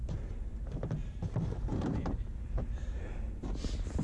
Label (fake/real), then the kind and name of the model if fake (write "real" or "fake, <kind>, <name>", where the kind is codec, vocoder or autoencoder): fake, vocoder, BigVGAN v2